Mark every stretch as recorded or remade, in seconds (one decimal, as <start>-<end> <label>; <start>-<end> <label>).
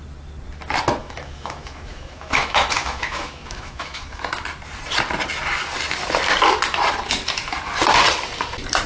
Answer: 0.0-1.0 recorded; 1.0-4.2 remade; 4.2-8.9 recorded